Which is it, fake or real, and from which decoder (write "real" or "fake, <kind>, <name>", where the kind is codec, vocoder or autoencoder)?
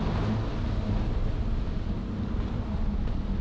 real